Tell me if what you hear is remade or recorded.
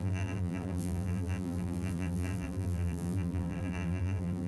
remade